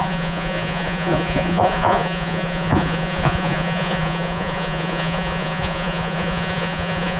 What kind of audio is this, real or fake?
fake